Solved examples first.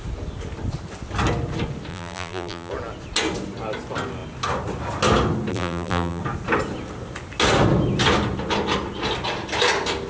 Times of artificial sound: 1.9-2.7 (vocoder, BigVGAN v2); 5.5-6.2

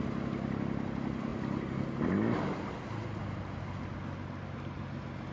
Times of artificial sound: none

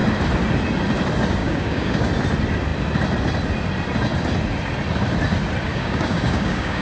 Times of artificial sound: 1.4-2.1 (codec, DAC); 5.7-6.8

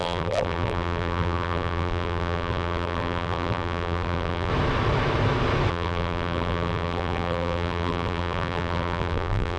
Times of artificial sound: 0.0-4.5 (vocoder, BigVGAN v2); 5.7-9.6

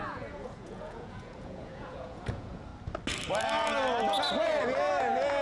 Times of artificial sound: 0.0-2.7 (vocoder, Vocos); 5.0-5.4

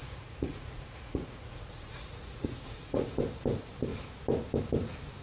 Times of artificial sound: 0.0-3.1 (vocoder, Vocos)

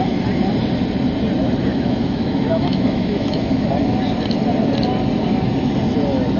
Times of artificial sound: 1.7-3.7 (autoencoder, DAC-VAE)